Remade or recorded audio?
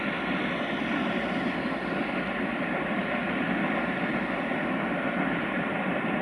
recorded